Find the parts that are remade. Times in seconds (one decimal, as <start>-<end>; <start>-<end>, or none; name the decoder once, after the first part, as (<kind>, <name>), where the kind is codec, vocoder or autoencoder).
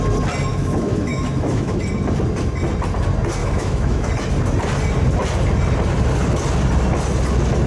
0.5-1.8 (autoencoder, DAC-VAE); 3.4-4.1